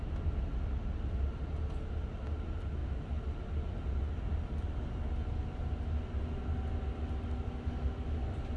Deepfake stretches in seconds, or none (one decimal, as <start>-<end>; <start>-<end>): none